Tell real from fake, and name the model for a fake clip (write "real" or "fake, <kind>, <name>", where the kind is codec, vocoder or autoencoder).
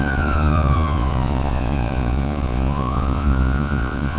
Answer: fake, vocoder, Vocos